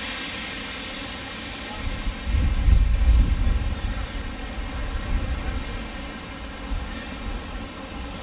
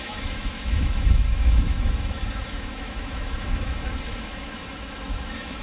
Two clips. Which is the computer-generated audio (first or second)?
second